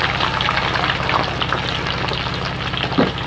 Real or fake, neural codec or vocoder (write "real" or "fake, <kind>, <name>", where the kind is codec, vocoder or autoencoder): real